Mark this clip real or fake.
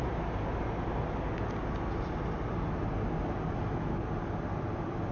real